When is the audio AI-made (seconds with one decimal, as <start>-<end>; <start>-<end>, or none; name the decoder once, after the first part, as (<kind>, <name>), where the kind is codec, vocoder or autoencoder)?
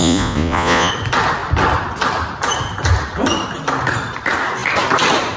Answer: 0.0-0.9 (vocoder, Vocos)